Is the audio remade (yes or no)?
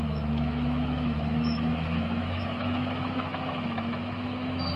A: yes